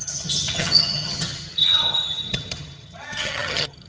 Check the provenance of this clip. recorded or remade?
remade